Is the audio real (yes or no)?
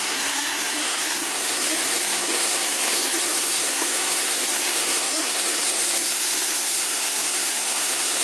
no